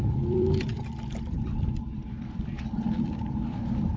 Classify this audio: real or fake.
fake